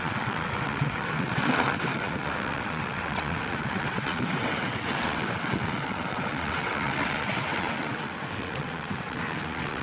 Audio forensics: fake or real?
fake